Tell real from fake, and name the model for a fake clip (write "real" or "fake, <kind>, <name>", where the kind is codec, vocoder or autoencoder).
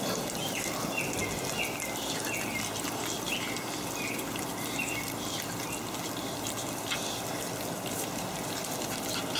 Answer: real